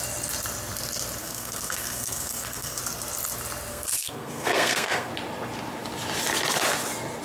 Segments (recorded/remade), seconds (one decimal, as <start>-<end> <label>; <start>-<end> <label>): 0.0-1.2 recorded; 1.2-2.8 remade; 2.8-3.7 recorded; 3.7-5.1 remade; 5.1-7.2 recorded